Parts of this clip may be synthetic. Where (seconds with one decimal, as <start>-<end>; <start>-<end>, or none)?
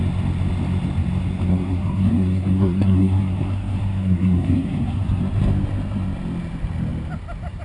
1.5-5.2